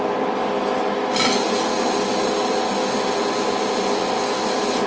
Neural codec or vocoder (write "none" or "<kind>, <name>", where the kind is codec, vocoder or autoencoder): none